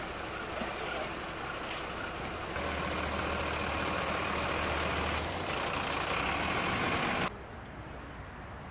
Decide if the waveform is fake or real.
real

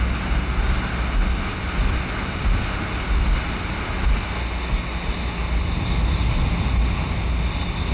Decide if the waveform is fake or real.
real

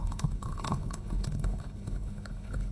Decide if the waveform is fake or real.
fake